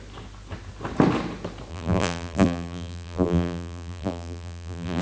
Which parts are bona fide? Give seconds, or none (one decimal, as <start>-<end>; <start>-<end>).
0.0-1.7